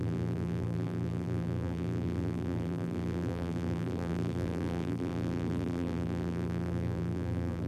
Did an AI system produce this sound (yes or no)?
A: yes